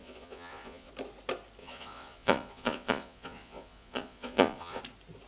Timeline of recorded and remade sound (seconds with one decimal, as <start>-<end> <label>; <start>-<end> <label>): 0.0-0.9 remade; 0.9-1.6 recorded; 1.6-4.8 remade; 4.8-5.3 recorded